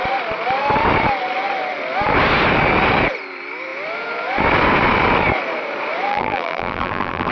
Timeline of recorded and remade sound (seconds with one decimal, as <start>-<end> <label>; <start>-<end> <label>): 0.0-6.1 recorded; 6.1-7.3 remade